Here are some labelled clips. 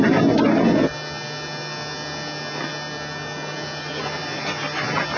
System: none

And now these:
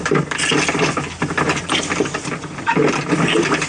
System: none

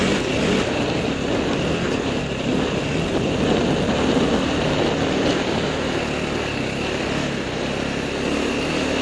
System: none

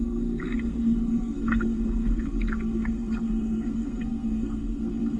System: codec, SNAC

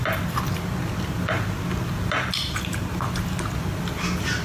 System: none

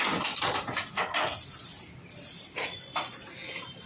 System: none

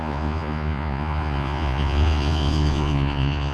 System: vocoder, Vocos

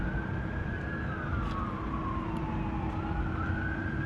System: none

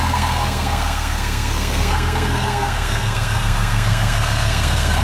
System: codec, SNAC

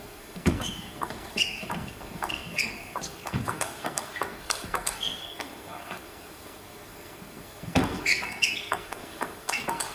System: codec, SNAC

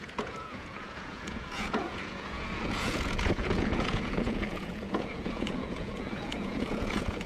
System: vocoder, Vocos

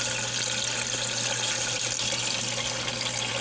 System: none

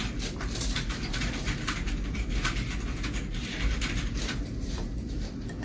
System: vocoder, BigVGAN v2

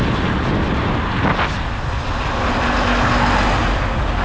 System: none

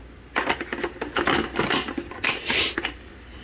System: none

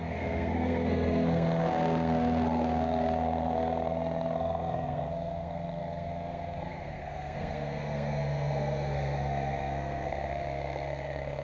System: codec, SNAC